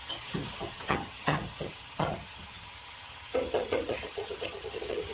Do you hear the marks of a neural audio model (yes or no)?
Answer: yes